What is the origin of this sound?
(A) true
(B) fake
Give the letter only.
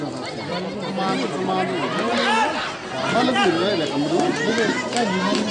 A